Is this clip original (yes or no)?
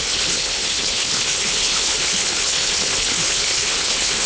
no